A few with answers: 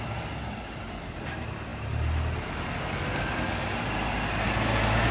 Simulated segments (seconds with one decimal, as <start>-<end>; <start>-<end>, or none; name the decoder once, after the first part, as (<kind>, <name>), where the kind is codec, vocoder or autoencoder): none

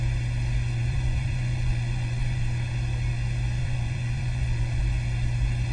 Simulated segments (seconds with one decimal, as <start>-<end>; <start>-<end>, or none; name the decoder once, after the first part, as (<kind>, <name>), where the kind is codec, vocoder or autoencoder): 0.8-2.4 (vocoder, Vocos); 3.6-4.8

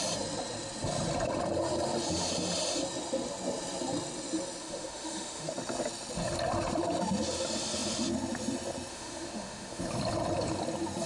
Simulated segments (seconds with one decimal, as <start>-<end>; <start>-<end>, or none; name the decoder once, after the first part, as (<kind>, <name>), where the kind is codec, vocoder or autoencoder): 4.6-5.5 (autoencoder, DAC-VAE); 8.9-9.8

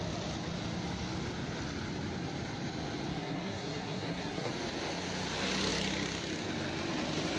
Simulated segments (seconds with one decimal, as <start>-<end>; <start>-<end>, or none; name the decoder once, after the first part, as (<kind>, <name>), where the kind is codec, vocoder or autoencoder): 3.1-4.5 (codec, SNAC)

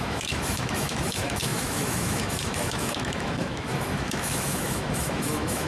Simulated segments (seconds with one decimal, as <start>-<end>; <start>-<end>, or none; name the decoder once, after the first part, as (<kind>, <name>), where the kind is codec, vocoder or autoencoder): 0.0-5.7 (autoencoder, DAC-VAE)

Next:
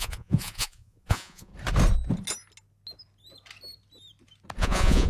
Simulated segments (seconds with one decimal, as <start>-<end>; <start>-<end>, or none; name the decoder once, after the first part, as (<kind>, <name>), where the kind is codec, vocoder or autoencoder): 0.0-1.5 (vocoder, Vocos); 4.6-5.1